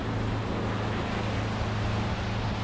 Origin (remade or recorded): recorded